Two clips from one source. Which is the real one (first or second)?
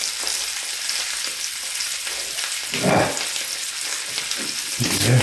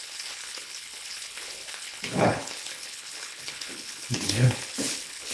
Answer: first